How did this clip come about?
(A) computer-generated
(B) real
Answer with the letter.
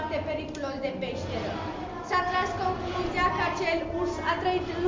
B